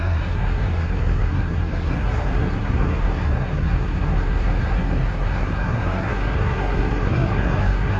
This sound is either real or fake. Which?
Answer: fake